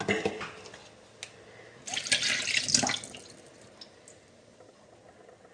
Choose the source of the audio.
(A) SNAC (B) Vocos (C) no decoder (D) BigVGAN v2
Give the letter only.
C